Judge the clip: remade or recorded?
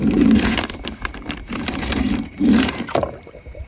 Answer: remade